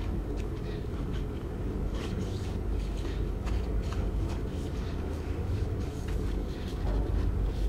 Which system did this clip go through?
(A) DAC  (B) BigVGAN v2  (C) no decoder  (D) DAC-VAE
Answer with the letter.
A